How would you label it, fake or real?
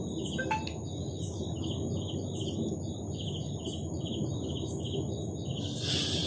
real